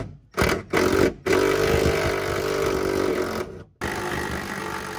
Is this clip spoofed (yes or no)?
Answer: no